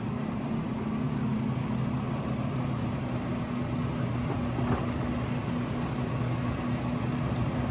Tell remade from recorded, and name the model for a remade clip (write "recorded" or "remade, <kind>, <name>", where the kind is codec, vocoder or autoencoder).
recorded